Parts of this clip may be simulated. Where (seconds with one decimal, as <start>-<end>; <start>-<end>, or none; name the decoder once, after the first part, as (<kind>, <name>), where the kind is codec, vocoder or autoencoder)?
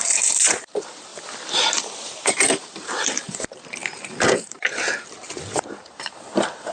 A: 0.0-1.1 (vocoder, BigVGAN v2); 2.3-6.7